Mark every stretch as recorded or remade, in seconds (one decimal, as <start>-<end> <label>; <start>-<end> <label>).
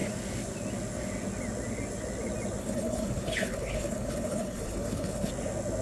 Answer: 0.0-2.6 recorded; 2.6-5.3 remade; 5.3-5.8 recorded